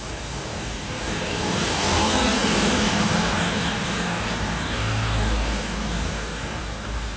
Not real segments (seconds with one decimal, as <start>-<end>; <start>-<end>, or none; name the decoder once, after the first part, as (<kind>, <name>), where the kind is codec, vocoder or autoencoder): 0.0-7.2 (codec, DAC)